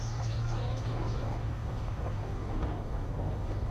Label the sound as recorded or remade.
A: remade